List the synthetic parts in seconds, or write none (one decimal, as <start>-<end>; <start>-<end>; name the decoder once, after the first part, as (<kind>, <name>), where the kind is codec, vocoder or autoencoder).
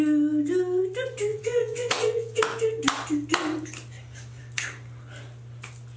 1.3-2.4 (vocoder, WaveNeXt)